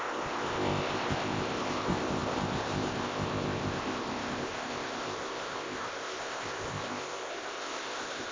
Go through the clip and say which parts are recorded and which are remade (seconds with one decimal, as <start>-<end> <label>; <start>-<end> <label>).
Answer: 0.0-8.3 remade